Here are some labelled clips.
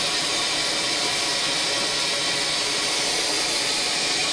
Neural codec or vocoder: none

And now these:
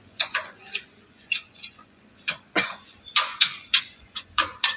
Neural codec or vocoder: vocoder, Vocos